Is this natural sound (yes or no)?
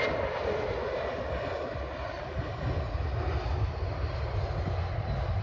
yes